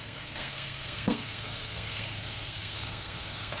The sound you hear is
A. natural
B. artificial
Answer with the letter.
B